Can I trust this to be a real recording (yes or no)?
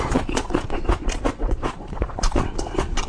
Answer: no